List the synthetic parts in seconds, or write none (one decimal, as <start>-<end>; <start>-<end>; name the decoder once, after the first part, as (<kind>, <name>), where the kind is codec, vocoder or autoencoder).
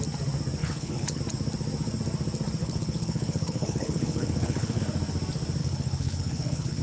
0.6-1.2 (codec, HILCodec); 2.6-4.8; 5.6-6.8